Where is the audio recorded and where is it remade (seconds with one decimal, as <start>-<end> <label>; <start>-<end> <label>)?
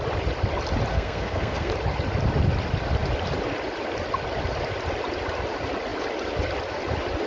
0.0-0.9 recorded; 0.9-1.7 remade; 1.7-7.3 recorded